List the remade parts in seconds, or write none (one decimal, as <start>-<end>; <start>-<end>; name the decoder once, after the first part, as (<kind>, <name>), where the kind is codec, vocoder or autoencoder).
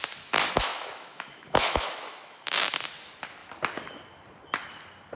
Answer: 0.7-2.5 (autoencoder, DAC-VAE)